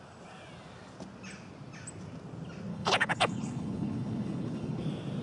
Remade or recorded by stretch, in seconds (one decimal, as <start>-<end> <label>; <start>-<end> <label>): 0.0-2.7 recorded; 2.7-4.8 remade; 4.8-5.2 recorded